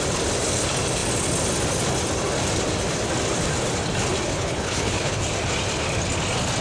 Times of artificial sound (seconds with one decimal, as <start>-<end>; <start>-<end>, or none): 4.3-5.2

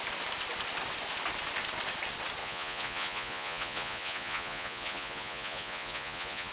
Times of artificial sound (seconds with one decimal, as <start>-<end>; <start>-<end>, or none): 2.4-6.5

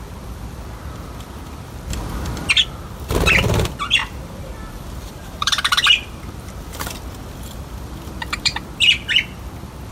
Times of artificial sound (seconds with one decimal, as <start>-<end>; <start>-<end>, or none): 4.0-8.6

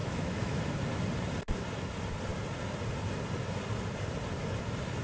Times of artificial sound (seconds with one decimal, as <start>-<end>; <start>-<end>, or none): 0.0-0.6

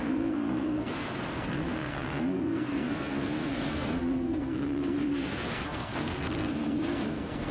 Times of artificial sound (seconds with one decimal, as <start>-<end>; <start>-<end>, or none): 0.0-7.5